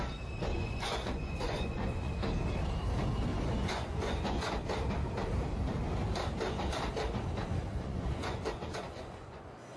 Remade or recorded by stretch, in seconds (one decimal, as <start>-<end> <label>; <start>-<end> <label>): 0.0-0.4 recorded; 0.4-2.1 remade; 2.1-3.3 recorded; 3.3-4.5 remade; 4.5-7.7 recorded; 7.7-9.8 remade